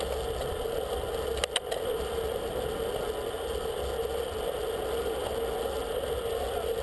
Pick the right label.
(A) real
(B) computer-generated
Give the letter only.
A